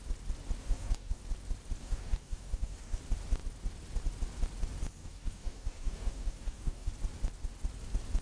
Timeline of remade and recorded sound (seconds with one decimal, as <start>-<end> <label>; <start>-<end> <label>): 0.0-0.6 recorded; 0.6-1.2 remade; 1.2-1.8 recorded; 1.8-3.0 remade; 3.0-5.0 recorded; 5.0-6.9 remade; 6.9-8.2 recorded